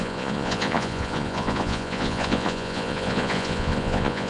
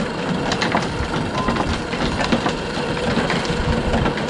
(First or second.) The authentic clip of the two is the second